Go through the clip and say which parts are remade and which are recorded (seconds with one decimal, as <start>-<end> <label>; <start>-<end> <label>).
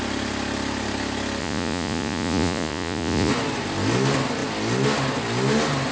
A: 0.0-1.4 recorded; 1.4-3.3 remade; 3.3-5.9 recorded